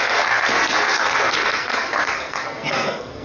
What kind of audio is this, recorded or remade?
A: remade